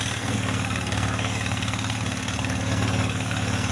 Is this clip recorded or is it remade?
remade